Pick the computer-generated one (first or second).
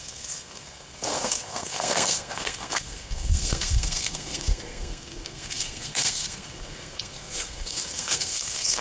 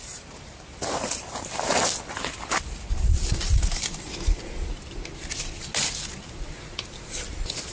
first